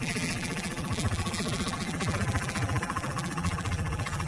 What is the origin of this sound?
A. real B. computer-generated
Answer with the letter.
B